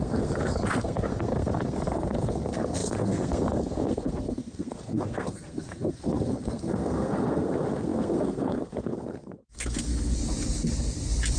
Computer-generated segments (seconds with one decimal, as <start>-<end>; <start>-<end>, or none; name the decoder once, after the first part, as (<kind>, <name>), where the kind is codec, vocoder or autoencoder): 0.0-10.2 (codec, SNAC)